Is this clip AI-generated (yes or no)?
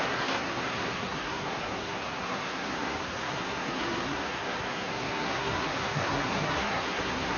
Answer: yes